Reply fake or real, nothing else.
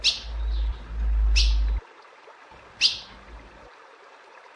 real